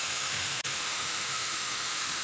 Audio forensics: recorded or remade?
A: remade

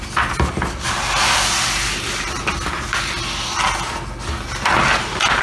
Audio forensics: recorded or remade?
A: recorded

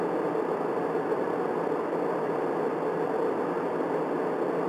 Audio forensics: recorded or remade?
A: recorded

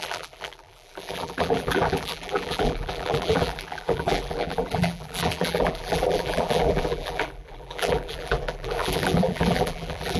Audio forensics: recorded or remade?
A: remade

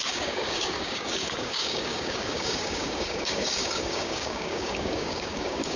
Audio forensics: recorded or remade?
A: remade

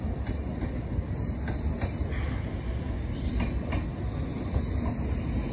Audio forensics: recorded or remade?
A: recorded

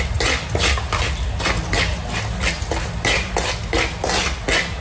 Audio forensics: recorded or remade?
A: recorded